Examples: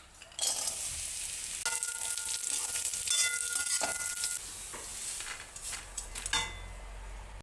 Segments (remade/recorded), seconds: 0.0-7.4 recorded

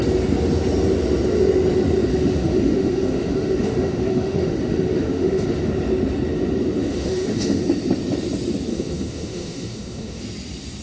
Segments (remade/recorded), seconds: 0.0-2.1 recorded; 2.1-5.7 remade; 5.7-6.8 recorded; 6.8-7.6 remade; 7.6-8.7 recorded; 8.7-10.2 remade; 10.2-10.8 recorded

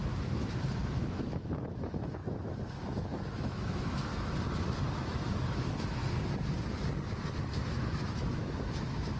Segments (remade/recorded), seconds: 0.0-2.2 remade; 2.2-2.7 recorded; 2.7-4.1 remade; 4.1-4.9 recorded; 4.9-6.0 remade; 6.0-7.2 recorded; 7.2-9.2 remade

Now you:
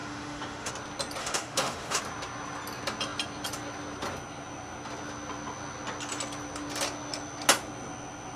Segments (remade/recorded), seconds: 0.0-0.7 remade; 0.7-1.2 recorded; 1.2-2.0 remade; 2.0-8.4 recorded

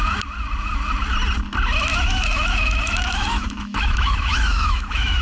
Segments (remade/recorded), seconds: 0.0-1.9 recorded; 1.9-5.2 remade

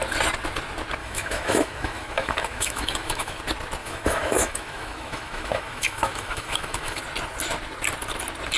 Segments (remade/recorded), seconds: 0.0-1.0 recorded; 1.0-3.4 remade; 3.4-3.8 recorded; 3.8-7.0 remade; 7.0-8.6 recorded